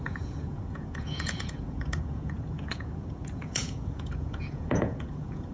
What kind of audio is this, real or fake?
fake